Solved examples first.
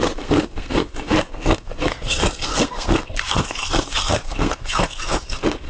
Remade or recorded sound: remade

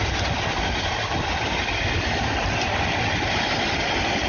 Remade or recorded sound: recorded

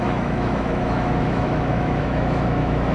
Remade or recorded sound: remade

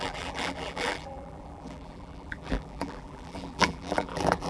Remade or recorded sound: remade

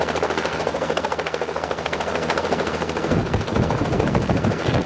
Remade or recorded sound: remade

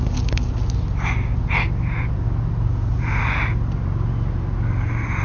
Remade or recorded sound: recorded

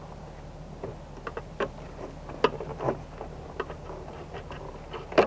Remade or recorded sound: recorded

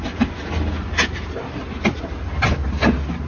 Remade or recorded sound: recorded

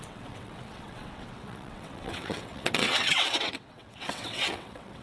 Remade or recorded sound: remade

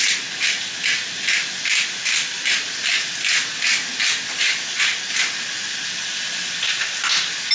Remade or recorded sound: recorded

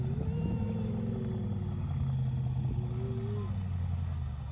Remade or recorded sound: recorded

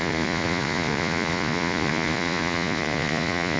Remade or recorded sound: remade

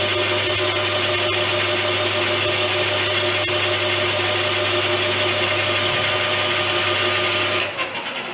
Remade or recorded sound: recorded